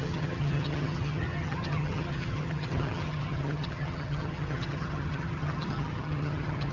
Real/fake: fake